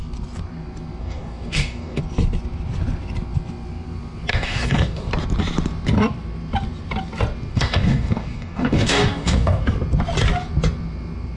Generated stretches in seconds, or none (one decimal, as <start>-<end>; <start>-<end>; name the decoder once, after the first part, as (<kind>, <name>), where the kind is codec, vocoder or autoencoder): 1.0-2.0 (codec, DAC); 4.3-5.1; 7.5-9.6